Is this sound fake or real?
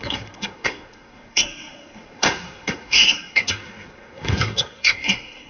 fake